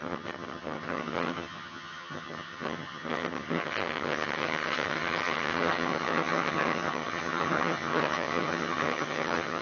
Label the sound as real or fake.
fake